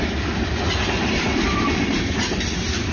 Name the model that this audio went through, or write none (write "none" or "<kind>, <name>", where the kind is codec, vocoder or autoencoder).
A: none